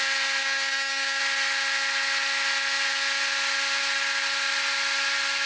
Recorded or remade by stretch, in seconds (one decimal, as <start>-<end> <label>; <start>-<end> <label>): 0.0-0.4 recorded; 0.4-1.2 remade; 1.2-5.5 recorded